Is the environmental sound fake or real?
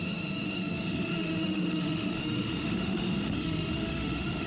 fake